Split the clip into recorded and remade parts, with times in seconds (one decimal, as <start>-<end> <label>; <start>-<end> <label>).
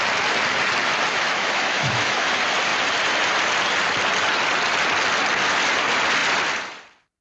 0.0-1.1 recorded; 1.1-2.3 remade; 2.3-7.2 recorded